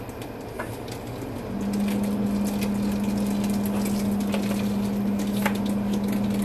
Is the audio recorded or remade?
recorded